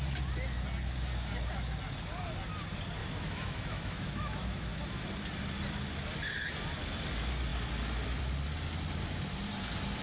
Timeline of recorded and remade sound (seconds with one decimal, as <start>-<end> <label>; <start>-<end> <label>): 0.0-3.0 recorded; 3.0-4.7 remade; 4.7-10.0 recorded

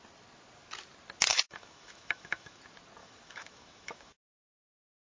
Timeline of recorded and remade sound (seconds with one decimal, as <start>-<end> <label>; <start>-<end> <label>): 0.0-1.3 recorded; 1.3-2.6 remade; 2.6-3.0 recorded; 3.0-5.1 remade